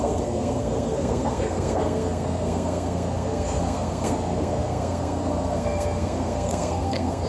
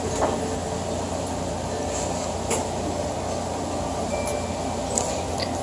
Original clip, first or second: second